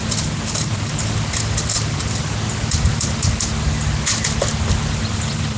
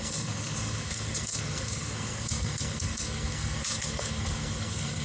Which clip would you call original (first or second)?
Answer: first